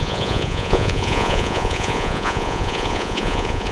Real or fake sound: fake